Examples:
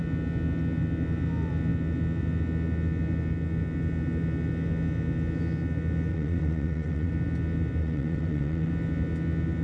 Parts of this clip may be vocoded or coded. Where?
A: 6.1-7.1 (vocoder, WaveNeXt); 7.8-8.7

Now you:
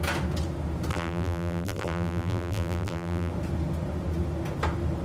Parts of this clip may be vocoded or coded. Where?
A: 0.9-3.3 (vocoder, BigVGAN v2)

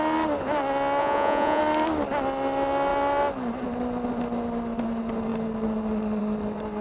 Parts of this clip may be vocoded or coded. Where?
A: 1.0-1.6 (vocoder, Vocos)

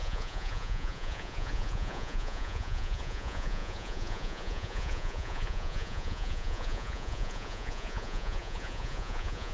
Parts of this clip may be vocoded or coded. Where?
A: 0.0-9.5 (vocoder, Vocos)

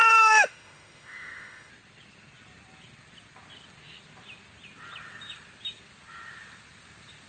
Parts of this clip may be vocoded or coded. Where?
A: 0.0-1.7 (autoencoder, DAC-VAE)

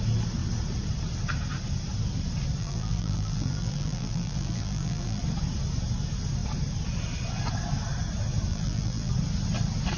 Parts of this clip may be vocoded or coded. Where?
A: 2.6-5.2 (vocoder, BigVGAN v2); 8.5-9.1

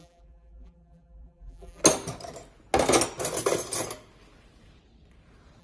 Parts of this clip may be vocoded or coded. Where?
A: 0.0-1.8 (vocoder, BigVGAN v2)

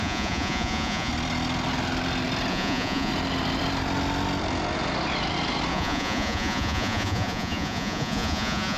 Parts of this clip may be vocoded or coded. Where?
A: 0.0-1.1 (vocoder, Vocos); 2.5-3.1; 5.7-8.8